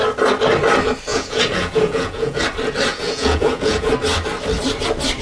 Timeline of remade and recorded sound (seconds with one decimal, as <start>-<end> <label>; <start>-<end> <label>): 0.0-1.1 recorded; 1.1-2.4 remade; 2.4-2.9 recorded; 2.9-3.9 remade; 3.9-5.2 recorded